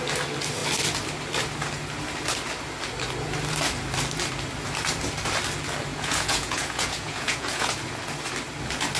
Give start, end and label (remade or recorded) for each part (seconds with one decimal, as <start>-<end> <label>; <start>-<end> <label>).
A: 0.0-5.9 recorded; 5.9-7.7 remade; 7.7-9.0 recorded